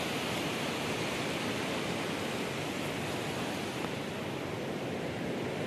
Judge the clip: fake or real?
real